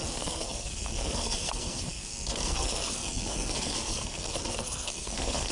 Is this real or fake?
fake